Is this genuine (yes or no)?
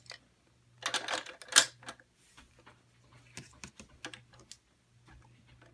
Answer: yes